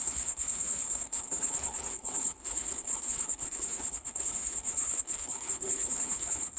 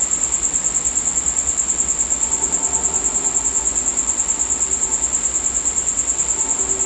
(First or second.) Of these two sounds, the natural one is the second